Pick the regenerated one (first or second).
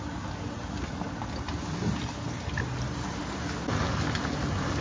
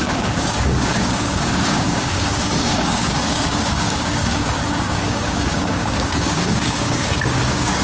second